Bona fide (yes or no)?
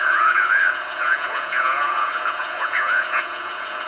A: no